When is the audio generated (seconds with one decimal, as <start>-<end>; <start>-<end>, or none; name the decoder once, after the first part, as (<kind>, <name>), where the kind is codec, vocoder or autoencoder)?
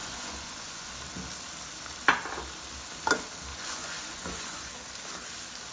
0.0-0.9 (vocoder, Vocos); 3.5-4.7